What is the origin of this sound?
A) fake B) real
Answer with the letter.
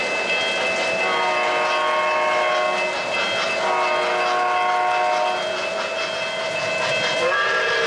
B